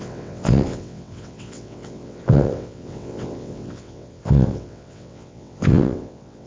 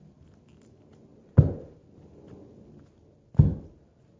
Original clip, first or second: second